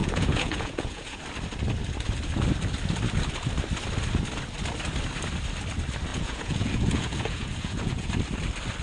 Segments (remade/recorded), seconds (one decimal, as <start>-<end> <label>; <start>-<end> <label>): 0.0-1.2 remade; 1.2-6.1 recorded; 6.1-8.1 remade; 8.1-8.8 recorded